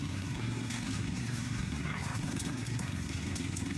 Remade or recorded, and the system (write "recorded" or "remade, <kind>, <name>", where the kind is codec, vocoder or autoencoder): remade, codec, SNAC